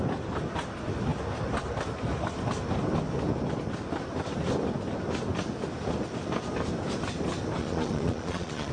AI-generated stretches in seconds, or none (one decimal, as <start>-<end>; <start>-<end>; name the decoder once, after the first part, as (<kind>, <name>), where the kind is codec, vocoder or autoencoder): 7.6-8.7 (vocoder, Vocos)